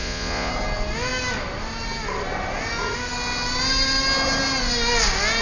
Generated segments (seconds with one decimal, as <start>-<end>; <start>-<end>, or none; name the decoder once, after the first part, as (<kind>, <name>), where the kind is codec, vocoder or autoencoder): 0.0-0.5 (vocoder, Vocos)